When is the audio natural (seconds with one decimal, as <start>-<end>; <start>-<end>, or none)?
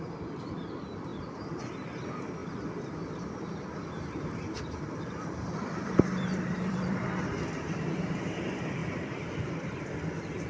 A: 0.0-1.1; 1.6-2.4; 7.6-8.8; 9.9-10.5